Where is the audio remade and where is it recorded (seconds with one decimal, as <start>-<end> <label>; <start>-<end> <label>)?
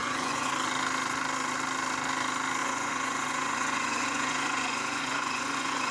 0.0-0.5 remade; 0.5-2.6 recorded; 2.6-5.9 remade